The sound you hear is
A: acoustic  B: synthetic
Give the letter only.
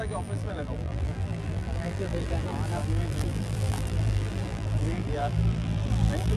B